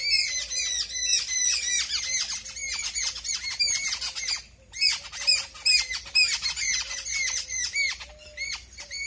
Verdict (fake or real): real